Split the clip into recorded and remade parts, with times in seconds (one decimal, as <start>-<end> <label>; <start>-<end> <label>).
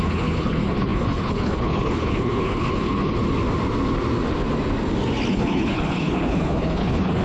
0.0-3.2 remade; 3.2-5.3 recorded; 5.3-7.2 remade